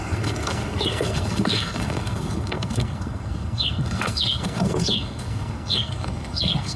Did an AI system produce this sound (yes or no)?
yes